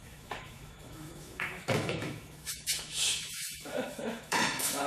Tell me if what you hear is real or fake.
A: fake